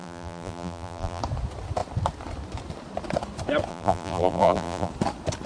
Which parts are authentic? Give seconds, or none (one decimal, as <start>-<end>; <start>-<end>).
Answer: 1.2-3.7; 4.9-5.5